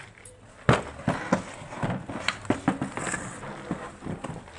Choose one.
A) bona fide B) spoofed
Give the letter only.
A